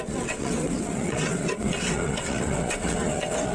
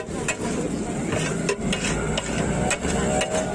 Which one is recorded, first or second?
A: second